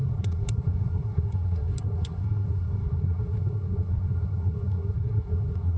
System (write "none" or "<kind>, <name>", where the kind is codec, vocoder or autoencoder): codec, SNAC